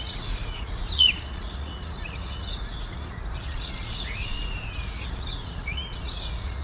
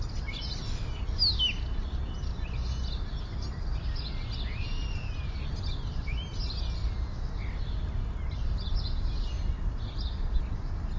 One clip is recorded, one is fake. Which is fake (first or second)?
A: first